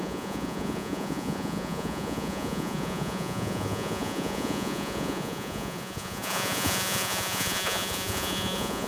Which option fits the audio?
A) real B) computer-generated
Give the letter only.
B